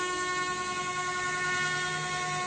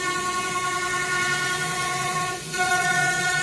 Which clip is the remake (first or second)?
second